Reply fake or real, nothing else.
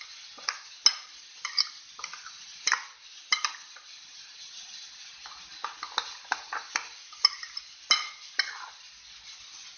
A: real